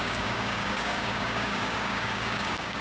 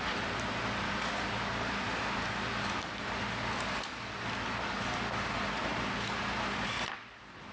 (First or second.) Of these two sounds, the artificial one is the first